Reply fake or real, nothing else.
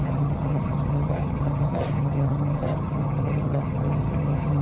fake